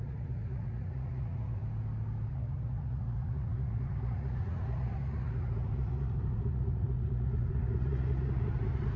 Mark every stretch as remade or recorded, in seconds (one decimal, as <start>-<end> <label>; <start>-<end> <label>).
0.0-1.6 remade; 1.6-2.3 recorded; 2.3-9.0 remade